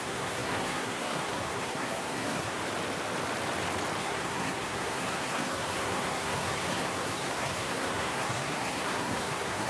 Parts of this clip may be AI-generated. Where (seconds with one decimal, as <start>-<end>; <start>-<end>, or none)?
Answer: 0.0-2.6; 4.0-9.7